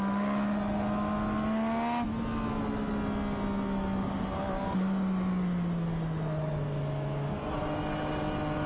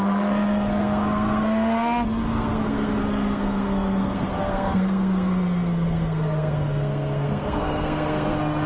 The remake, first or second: second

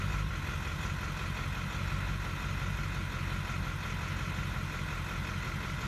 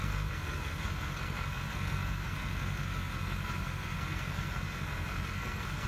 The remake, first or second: second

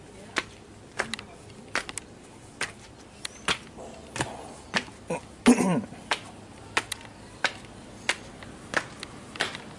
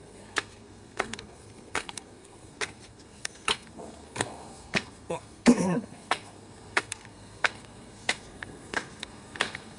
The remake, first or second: second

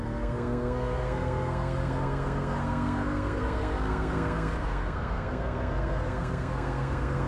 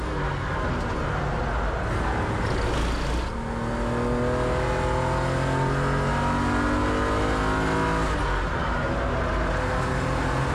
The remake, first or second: first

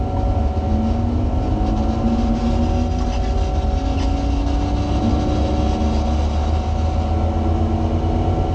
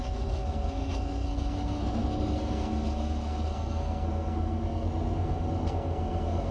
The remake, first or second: second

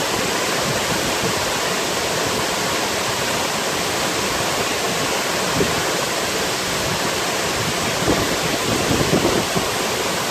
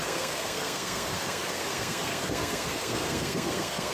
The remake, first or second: second